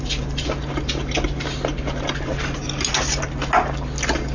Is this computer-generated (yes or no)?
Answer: no